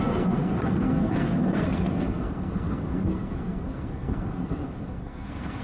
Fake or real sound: fake